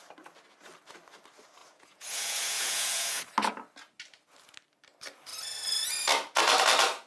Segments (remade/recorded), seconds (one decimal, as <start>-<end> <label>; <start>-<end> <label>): 0.0-1.6 recorded; 1.6-3.2 remade; 3.2-7.1 recorded